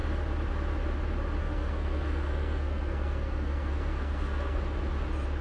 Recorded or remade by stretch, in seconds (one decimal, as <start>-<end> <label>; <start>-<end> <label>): 0.0-1.4 recorded; 1.4-4.6 remade; 4.6-5.4 recorded